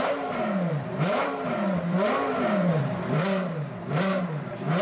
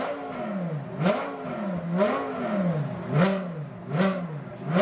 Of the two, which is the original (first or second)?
second